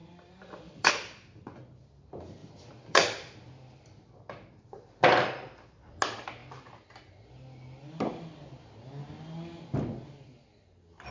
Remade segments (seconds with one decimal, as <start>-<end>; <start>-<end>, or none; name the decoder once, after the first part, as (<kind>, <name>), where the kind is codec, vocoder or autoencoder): 0.0-0.9 (vocoder, BigVGAN v2); 2.4-6.0